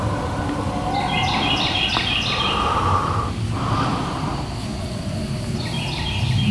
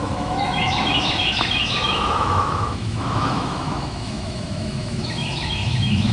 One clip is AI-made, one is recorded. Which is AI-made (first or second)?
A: second